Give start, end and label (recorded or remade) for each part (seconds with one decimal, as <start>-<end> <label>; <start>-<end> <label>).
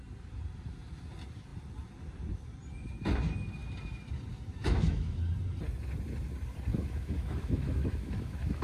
0.0-4.6 recorded; 4.6-5.2 remade; 5.2-6.7 recorded; 6.7-8.6 remade